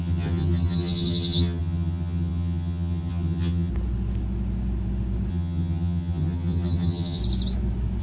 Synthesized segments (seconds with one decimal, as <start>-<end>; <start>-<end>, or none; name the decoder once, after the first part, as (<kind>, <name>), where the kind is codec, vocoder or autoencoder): 0.0-3.7 (vocoder, HiFi-GAN); 5.3-7.2